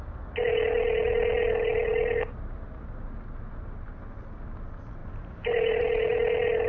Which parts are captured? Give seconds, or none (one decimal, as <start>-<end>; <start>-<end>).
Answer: 0.0-5.0; 5.8-6.7